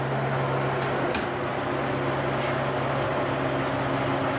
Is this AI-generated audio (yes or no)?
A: no